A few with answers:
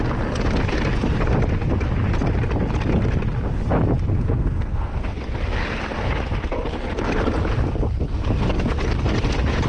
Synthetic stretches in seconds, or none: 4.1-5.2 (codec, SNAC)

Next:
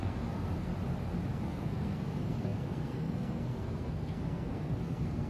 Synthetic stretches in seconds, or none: 0.0-0.7 (codec, SNAC); 1.3-5.3

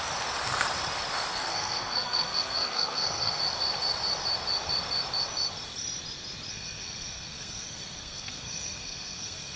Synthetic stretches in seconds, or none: 1.4-3.4 (codec, SNAC); 6.5-9.6

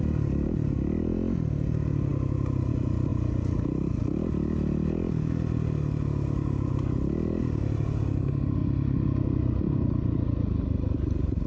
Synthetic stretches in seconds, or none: none